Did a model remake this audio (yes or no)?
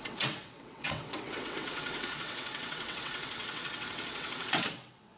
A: yes